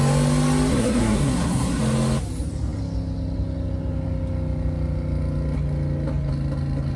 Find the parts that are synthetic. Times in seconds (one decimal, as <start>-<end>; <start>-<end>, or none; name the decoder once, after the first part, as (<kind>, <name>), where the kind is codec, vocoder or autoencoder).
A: 0.7-1.8 (codec, SNAC)